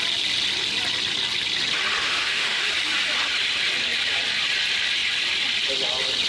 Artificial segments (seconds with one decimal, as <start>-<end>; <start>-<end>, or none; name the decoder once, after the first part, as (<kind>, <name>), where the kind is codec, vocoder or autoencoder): 2.0-2.6 (autoencoder, DAC-VAE)